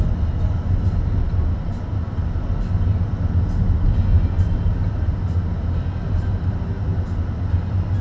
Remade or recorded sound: recorded